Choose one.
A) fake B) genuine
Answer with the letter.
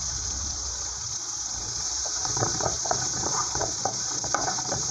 A